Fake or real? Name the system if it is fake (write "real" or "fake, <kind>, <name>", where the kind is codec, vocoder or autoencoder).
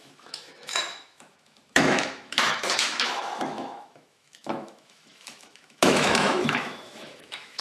fake, autoencoder, DAC-VAE